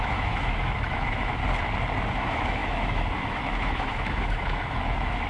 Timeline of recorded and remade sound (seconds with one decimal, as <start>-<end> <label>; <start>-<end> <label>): 0.0-1.4 remade; 1.4-2.2 recorded; 2.2-5.3 remade